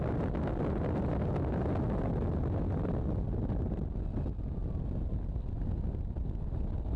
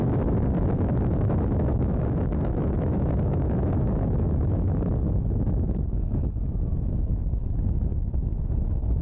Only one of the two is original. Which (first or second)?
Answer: first